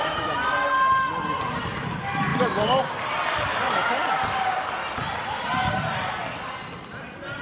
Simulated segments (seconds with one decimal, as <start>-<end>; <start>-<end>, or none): none